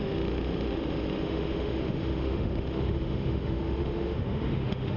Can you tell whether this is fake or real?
fake